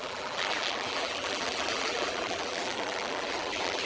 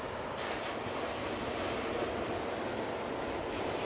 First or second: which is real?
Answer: second